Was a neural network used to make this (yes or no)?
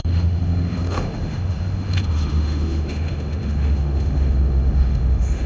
yes